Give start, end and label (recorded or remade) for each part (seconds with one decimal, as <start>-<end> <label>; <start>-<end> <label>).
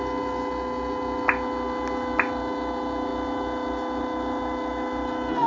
0.0-5.5 recorded